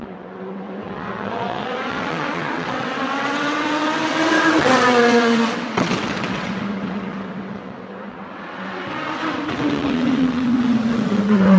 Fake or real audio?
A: fake